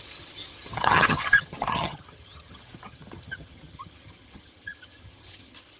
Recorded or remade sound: remade